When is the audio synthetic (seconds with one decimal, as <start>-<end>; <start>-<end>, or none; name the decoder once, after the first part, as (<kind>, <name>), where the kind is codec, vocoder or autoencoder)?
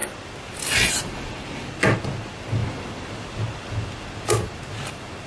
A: none